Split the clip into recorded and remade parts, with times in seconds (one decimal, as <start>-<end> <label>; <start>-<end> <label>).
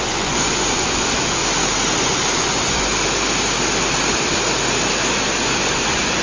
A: 0.0-1.4 remade; 1.4-2.0 recorded; 2.0-2.9 remade; 2.9-5.4 recorded; 5.4-6.2 remade